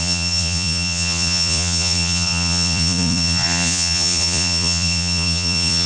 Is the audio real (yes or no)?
no